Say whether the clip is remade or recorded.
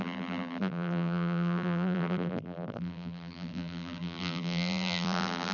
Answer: remade